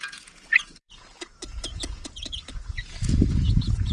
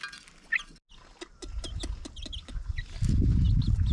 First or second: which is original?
second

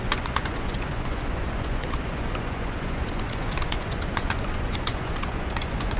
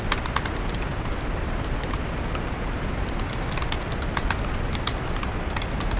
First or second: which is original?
second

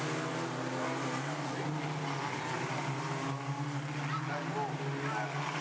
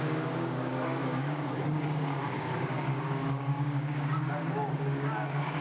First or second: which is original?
first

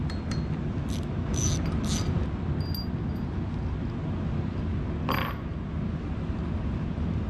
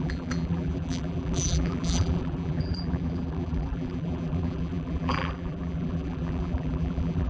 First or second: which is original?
first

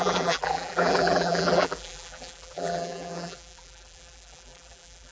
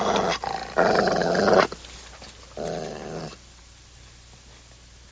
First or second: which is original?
second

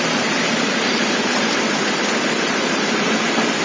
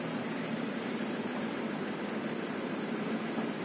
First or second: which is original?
second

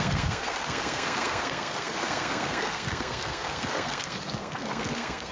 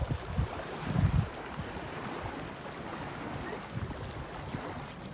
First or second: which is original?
second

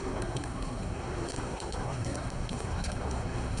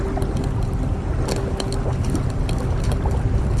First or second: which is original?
second